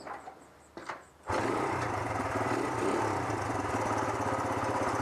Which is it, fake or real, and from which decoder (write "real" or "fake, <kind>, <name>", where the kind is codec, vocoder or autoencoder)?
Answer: fake, vocoder, BigVGAN v2